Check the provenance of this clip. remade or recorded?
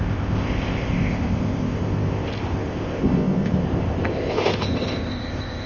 remade